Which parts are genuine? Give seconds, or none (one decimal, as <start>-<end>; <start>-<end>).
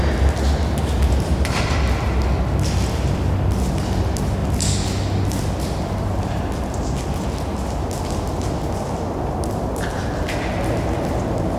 0.0-11.6